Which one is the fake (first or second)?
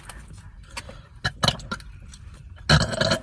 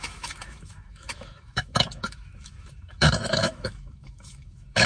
second